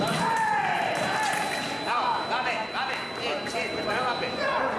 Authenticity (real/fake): real